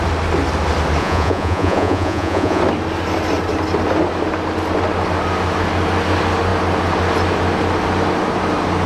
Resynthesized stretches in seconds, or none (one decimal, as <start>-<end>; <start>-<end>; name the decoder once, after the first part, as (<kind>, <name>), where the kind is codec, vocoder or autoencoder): 1.0-2.6 (vocoder, Vocos)